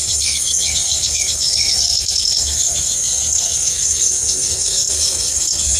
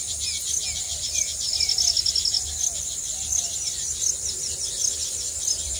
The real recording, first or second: second